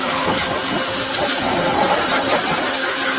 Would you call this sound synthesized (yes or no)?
no